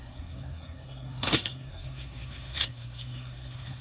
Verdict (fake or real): fake